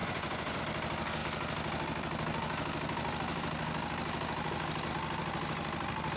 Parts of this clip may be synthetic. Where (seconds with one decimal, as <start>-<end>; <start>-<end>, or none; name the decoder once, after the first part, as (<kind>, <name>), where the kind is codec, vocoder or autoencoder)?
0.0-0.6 (vocoder, Vocos)